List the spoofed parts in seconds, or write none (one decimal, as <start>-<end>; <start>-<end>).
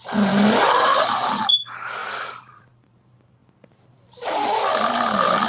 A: none